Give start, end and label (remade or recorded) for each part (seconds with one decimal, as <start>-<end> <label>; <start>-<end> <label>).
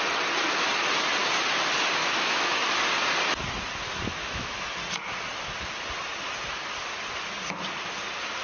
0.0-2.0 recorded; 2.0-2.7 remade; 2.7-4.2 recorded; 4.2-4.8 remade; 4.8-8.4 recorded